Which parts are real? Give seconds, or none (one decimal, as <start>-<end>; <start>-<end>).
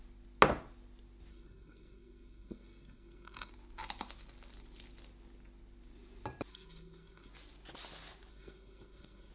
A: 0.0-1.3; 3.5-6.5; 7.3-8.3